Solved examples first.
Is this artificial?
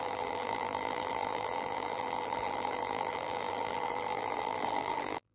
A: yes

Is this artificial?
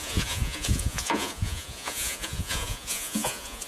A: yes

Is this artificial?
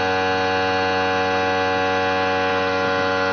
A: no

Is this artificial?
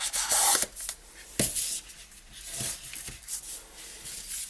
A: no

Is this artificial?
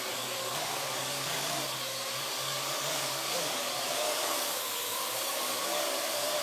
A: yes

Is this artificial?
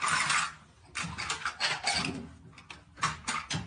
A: no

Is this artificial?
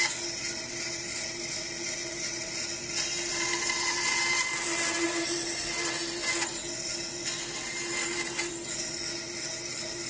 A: no